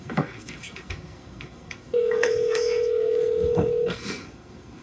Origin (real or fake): fake